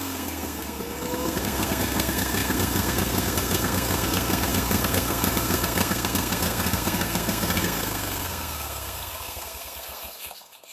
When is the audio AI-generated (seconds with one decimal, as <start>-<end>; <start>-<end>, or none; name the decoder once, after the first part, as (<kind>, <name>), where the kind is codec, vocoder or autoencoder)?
0.0-10.7 (codec, SNAC)